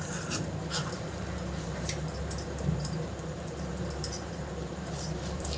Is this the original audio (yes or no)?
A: no